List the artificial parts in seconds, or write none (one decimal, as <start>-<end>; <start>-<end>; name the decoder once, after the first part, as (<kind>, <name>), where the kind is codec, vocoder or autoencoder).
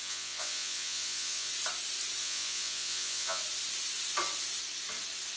0.0-1.5 (vocoder, Vocos); 2.2-3.4